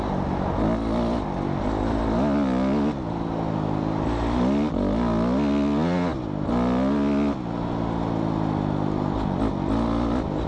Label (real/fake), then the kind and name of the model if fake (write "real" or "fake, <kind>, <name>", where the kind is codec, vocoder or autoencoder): real